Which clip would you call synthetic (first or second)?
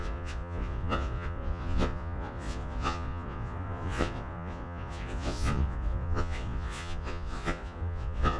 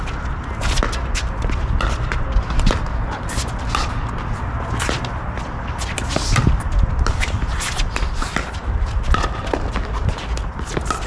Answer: first